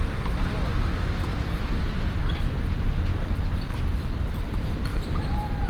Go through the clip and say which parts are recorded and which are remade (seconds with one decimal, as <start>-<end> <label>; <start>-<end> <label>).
0.0-1.3 recorded; 1.3-1.9 remade; 1.9-4.9 recorded; 4.9-5.7 remade